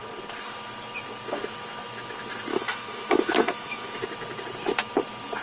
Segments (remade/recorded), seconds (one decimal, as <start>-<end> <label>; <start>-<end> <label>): 0.0-2.5 recorded; 2.5-4.0 remade; 4.0-5.4 recorded

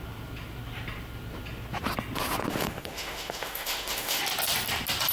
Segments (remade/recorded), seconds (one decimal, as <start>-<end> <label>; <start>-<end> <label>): 0.0-2.5 recorded; 2.5-4.2 remade; 4.2-5.1 recorded

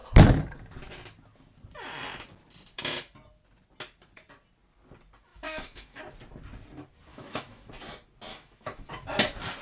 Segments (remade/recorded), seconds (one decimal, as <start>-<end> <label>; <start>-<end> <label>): 0.0-5.3 recorded; 5.3-6.0 remade; 6.0-7.1 recorded; 7.1-7.7 remade; 7.7-8.3 recorded; 8.3-8.9 remade; 8.9-9.6 recorded

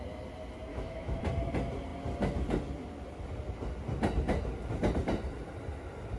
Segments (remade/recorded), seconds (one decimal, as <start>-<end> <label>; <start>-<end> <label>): 0.0-0.7 recorded; 0.7-1.2 remade; 1.2-6.2 recorded

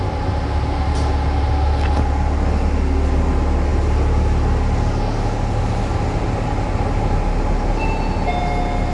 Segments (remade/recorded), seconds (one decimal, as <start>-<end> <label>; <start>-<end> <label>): 0.0-8.9 recorded

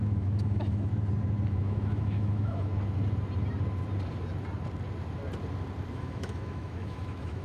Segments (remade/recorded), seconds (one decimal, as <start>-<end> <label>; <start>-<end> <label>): 0.0-0.9 remade; 0.9-1.5 recorded; 1.5-2.7 remade; 2.7-5.9 recorded; 5.9-7.4 remade